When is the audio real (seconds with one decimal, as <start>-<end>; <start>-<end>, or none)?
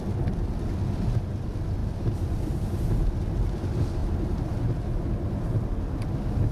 0.0-6.5